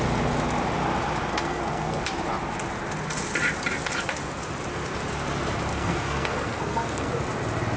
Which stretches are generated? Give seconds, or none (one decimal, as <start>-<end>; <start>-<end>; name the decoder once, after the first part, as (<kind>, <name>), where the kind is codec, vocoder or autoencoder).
1.3-2.0 (codec, SNAC); 5.7-7.1